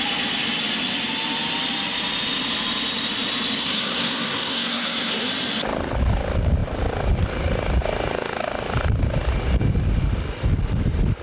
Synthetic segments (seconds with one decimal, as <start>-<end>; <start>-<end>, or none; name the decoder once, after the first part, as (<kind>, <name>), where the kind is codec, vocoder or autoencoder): 3.6-5.3 (codec, SNAC)